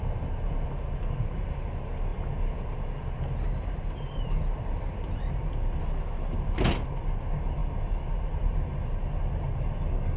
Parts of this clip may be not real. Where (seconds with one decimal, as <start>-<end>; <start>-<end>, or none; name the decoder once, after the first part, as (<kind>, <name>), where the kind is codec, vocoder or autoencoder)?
none